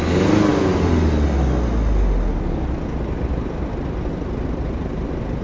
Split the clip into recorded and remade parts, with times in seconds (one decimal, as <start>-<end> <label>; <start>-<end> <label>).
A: 0.0-5.4 recorded